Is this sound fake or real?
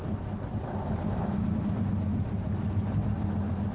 real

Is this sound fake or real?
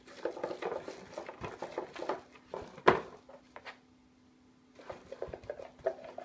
real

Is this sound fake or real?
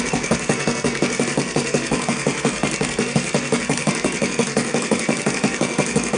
fake